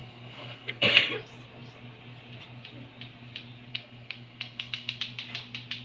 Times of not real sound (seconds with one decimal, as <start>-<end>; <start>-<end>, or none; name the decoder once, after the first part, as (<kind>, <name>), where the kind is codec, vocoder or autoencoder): 0.0-1.0 (codec, SNAC); 3.7-5.0